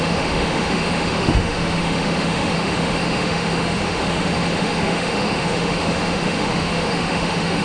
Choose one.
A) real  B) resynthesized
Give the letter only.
B